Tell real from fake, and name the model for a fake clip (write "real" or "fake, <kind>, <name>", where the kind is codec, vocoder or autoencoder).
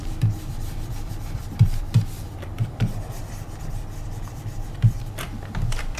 fake, vocoder, BigVGAN v2